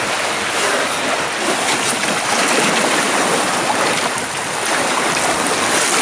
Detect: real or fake real